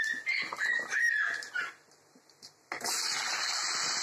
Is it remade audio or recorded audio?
recorded